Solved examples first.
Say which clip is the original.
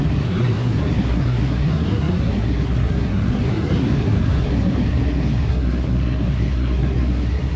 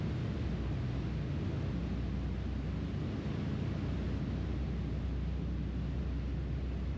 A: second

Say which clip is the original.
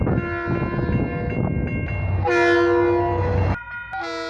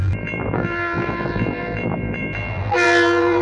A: first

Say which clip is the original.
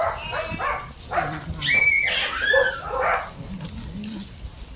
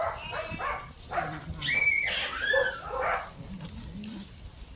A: first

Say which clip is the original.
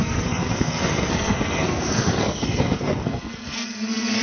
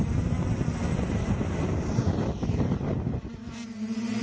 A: second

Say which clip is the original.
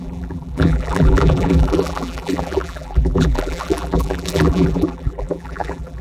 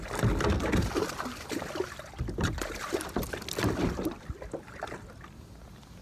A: second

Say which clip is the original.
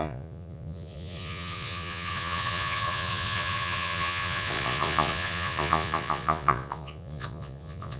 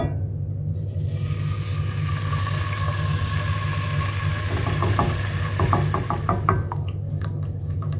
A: second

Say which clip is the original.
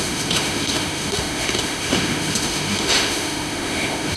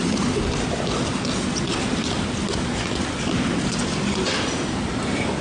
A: second